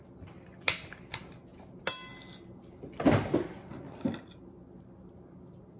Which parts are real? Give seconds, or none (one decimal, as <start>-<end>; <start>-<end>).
0.0-5.8